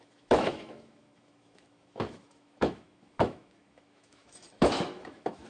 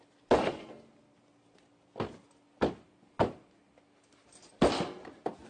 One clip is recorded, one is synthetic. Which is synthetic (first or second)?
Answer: first